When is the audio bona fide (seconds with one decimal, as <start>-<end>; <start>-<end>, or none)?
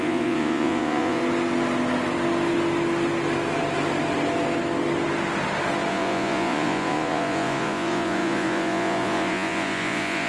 1.2-5.9